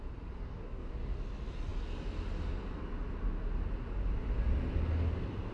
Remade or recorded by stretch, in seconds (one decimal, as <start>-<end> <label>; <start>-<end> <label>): 0.0-0.4 recorded; 0.4-0.9 remade; 0.9-5.5 recorded